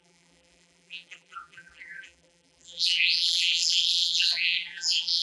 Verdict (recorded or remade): remade